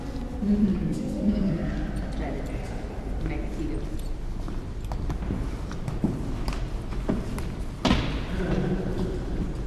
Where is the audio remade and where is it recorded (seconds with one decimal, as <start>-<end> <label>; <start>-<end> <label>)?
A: 0.0-0.7 recorded; 0.7-1.7 remade; 1.7-9.7 recorded